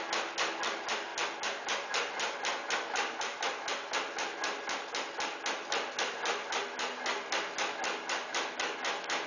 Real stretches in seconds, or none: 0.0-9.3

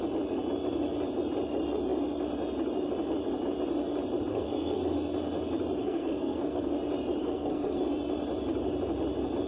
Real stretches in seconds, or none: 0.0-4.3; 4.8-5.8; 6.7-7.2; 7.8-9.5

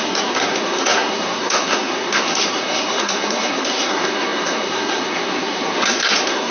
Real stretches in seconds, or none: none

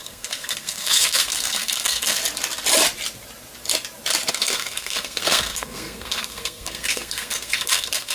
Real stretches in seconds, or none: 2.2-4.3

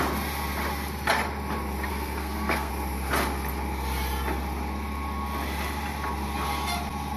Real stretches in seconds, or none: 0.0-1.9; 2.7-7.2

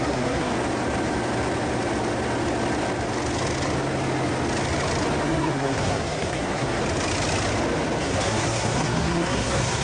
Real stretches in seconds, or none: 0.5-5.2; 6.8-8.0

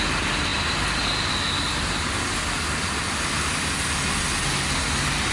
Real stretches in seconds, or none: 0.0-5.3

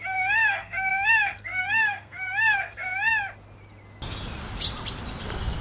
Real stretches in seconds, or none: 3.1-5.6